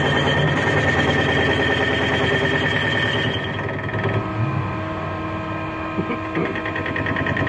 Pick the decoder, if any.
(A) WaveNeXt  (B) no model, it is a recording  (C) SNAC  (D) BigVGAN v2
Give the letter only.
B